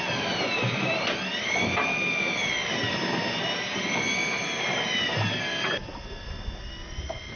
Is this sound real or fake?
real